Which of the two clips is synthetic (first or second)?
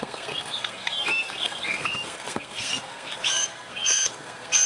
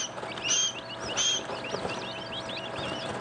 first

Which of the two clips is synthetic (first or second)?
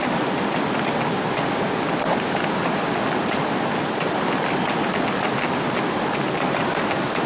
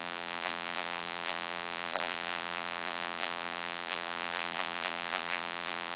second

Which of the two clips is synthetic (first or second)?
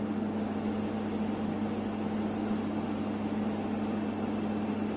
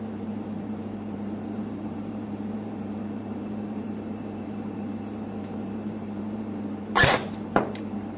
second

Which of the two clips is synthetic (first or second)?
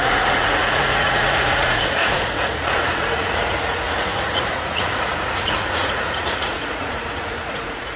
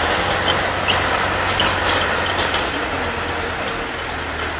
first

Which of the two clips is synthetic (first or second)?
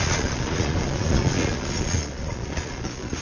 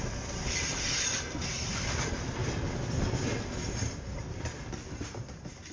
first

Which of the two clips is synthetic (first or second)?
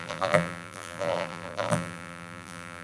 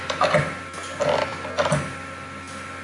first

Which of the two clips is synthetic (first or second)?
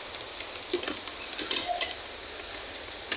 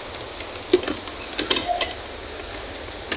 first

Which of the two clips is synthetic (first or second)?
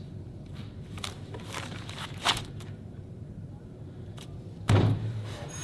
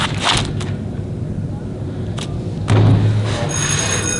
first